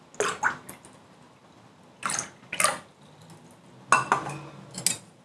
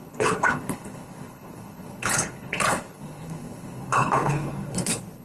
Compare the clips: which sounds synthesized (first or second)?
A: second